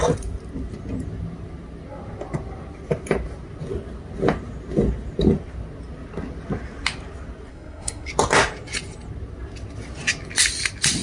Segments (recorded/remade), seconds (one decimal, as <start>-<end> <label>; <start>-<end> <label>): 0.0-7.5 recorded; 7.5-8.1 remade; 8.1-11.0 recorded